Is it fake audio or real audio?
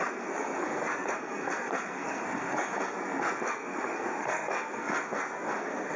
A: fake